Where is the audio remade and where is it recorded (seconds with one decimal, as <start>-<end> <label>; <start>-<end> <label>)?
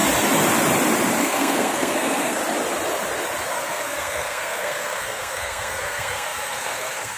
0.0-1.2 recorded; 1.2-2.4 remade; 2.4-3.5 recorded; 3.5-7.2 remade